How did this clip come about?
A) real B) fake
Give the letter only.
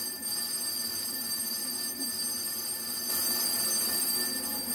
A